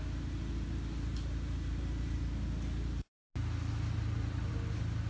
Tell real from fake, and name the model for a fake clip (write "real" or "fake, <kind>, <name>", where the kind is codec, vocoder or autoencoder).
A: real